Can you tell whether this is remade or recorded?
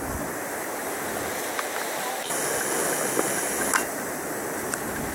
recorded